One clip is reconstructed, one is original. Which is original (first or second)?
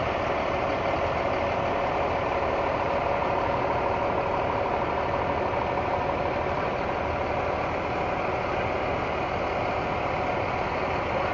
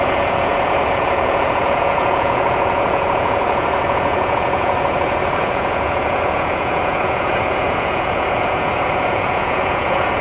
first